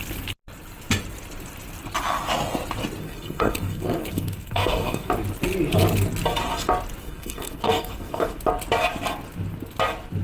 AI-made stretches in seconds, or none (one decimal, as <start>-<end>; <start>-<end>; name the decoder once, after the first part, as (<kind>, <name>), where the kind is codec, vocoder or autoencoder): 3.0-5.1 (codec, SNAC); 7.0-8.4